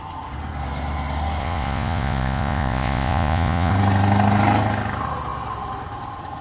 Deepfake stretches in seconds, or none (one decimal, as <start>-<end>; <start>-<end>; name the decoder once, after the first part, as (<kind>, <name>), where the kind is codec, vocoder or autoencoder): 1.4-3.7 (vocoder, Vocos)